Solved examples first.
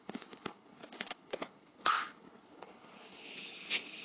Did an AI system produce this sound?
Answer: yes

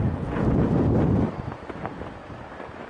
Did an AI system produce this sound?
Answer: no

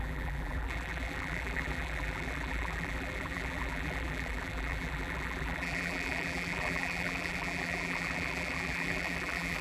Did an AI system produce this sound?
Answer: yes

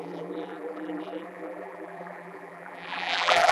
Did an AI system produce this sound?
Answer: yes